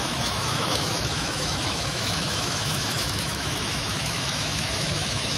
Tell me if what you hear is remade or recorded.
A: remade